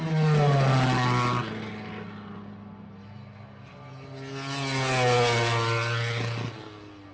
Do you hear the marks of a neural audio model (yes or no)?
no